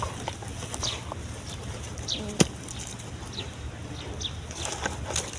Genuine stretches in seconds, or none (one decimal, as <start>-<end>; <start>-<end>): 0.0-0.5; 3.7-5.4